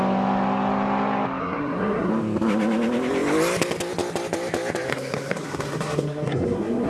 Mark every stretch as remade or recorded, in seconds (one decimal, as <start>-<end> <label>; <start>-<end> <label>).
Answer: 0.0-1.4 recorded; 1.4-2.1 remade; 2.1-4.9 recorded; 4.9-6.9 remade